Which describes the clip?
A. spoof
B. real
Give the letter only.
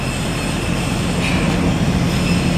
B